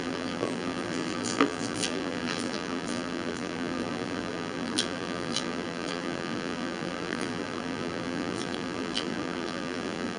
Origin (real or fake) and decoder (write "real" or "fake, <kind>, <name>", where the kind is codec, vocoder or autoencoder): fake, vocoder, BigVGAN v2